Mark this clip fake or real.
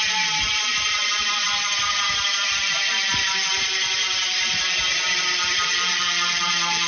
fake